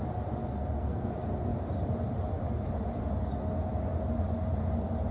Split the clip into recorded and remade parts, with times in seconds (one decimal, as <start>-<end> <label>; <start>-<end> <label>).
0.0-0.5 recorded; 0.5-1.1 remade; 1.1-5.1 recorded